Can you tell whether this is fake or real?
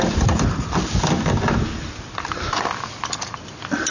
real